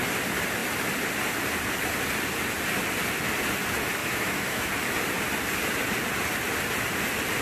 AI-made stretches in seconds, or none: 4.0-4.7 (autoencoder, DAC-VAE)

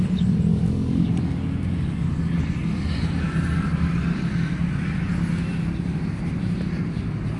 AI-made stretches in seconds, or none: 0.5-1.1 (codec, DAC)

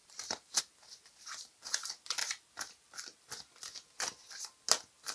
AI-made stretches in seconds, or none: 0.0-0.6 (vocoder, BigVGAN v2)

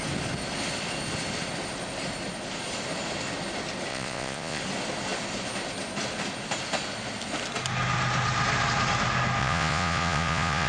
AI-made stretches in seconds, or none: 3.9-4.6 (vocoder, Vocos); 9.4-10.7

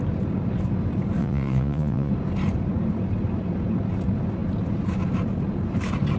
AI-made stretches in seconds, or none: 1.2-2.1 (vocoder, Vocos)